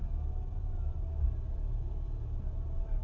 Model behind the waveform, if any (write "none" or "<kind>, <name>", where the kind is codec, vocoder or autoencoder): none